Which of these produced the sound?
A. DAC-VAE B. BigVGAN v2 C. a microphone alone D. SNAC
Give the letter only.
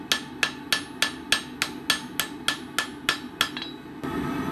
C